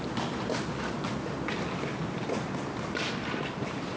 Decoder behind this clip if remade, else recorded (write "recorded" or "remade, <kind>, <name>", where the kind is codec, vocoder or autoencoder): recorded